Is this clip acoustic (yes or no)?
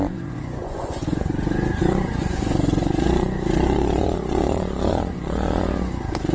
no